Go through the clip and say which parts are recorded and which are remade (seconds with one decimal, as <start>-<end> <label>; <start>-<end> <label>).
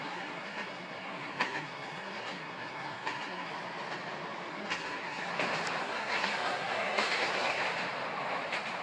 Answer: 0.0-3.5 remade; 3.5-4.5 recorded; 4.5-5.3 remade; 5.3-5.8 recorded; 5.8-7.6 remade; 7.6-8.8 recorded